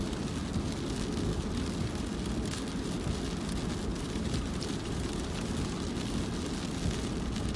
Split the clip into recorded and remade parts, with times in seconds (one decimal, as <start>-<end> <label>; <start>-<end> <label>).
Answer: 0.0-3.9 recorded; 3.9-5.5 remade; 5.5-7.6 recorded